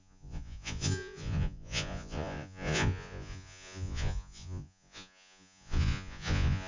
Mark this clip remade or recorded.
remade